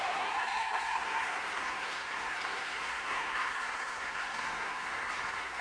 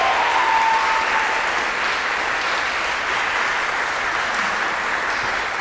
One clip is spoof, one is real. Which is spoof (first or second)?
first